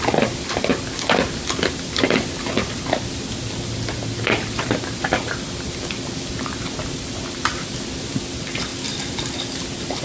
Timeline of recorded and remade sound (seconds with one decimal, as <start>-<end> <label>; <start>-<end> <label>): 0.0-10.0 recorded